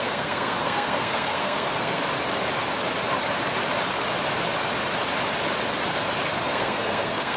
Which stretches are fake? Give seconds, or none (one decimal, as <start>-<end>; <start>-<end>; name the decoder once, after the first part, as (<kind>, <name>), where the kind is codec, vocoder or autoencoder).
0.0-2.0 (codec, SNAC); 6.4-7.4

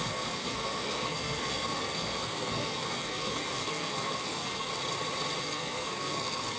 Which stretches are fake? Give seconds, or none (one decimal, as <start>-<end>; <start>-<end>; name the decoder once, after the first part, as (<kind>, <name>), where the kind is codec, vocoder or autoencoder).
0.0-4.7 (codec, SNAC); 5.4-6.6